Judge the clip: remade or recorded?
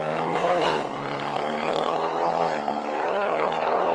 remade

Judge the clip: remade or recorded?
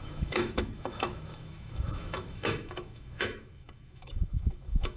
remade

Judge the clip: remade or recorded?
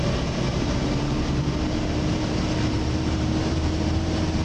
remade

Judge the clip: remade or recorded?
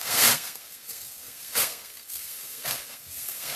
remade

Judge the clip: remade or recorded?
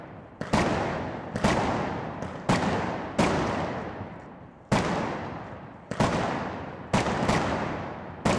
recorded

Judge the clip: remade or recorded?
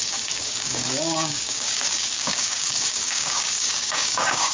remade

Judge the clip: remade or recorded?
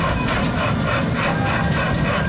recorded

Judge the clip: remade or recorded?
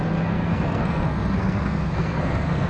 remade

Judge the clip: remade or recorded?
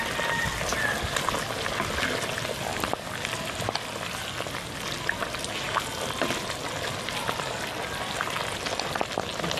recorded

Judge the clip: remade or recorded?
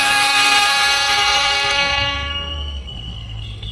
remade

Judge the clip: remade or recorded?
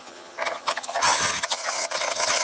remade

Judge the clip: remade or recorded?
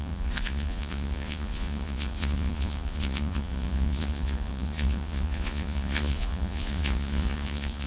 remade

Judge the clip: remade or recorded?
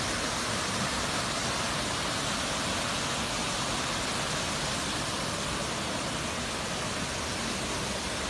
recorded